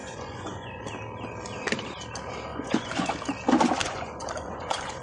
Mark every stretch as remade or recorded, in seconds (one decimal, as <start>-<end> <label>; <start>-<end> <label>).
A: 0.0-0.8 remade; 0.8-2.5 recorded; 2.5-3.1 remade; 3.1-3.8 recorded; 3.8-5.0 remade